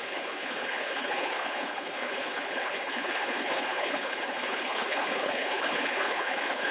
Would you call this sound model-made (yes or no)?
yes